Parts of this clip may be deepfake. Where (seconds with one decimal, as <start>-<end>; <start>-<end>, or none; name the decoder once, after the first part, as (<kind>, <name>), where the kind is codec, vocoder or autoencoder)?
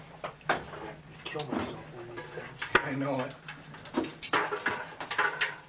none